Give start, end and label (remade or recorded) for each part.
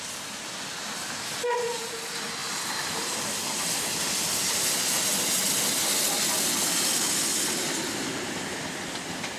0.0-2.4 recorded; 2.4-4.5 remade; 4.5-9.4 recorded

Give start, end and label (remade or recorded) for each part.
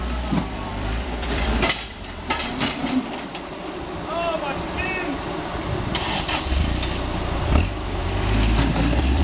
0.0-3.8 remade; 3.8-8.0 recorded; 8.0-9.2 remade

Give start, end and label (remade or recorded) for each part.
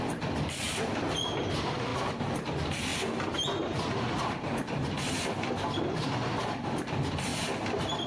0.0-1.9 remade; 1.9-2.5 recorded; 2.5-2.9 remade; 2.9-5.8 recorded; 5.8-7.3 remade; 7.3-8.1 recorded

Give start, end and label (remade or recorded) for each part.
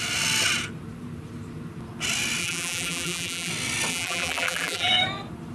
0.0-2.4 recorded; 2.4-3.5 remade; 3.5-3.9 recorded; 3.9-4.9 remade; 4.9-5.5 recorded